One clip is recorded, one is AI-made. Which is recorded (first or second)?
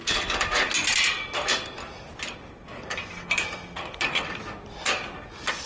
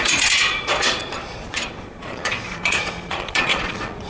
first